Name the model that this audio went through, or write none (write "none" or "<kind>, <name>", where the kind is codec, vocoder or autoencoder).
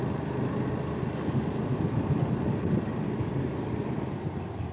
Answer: none